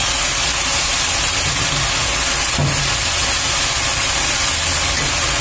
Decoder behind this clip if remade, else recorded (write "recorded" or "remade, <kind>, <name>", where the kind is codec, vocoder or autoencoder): recorded